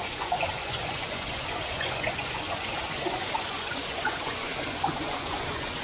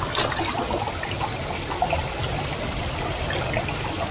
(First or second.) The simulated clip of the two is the first